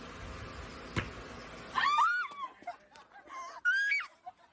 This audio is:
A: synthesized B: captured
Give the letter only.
B